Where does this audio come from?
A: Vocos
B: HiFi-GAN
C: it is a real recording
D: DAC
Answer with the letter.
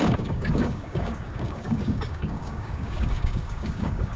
D